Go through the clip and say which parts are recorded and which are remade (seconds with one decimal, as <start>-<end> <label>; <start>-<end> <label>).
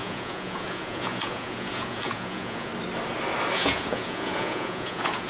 0.0-2.7 remade; 2.7-3.5 recorded; 3.5-5.3 remade